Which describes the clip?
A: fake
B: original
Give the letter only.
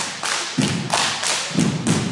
B